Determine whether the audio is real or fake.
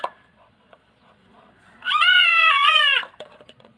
fake